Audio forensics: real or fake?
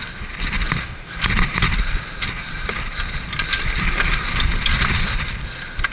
real